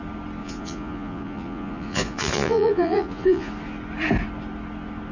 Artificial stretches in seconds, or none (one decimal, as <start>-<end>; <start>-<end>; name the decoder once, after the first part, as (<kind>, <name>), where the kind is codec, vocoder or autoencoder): 0.4-3.5 (vocoder, Vocos)